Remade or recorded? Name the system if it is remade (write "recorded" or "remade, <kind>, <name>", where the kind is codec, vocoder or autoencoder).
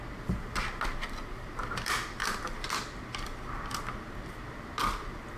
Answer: recorded